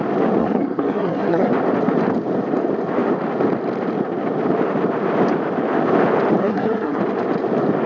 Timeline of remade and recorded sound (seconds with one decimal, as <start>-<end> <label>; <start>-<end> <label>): 0.0-0.4 recorded; 0.4-1.5 remade; 1.5-6.4 recorded; 6.4-7.0 remade; 7.0-7.9 recorded